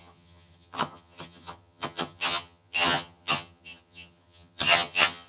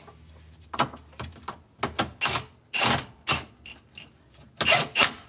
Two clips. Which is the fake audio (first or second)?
first